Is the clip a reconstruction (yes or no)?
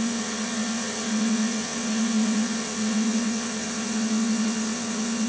yes